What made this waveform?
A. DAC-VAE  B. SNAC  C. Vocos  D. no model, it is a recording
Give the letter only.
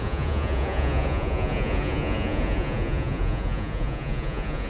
C